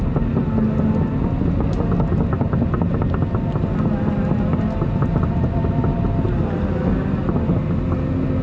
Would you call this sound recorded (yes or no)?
yes